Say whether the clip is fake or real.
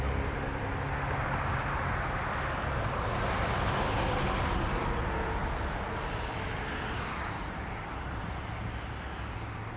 real